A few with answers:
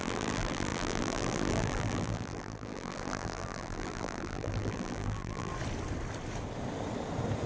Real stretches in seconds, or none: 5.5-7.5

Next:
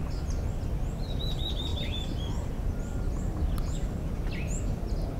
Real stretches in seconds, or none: 0.0-1.7; 3.1-5.2

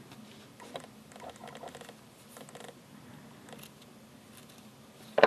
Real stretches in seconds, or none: 0.0-5.3

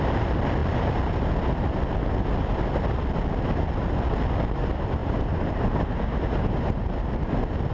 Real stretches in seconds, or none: 0.0-5.0; 7.2-7.7